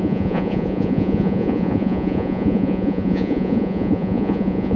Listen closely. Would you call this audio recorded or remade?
remade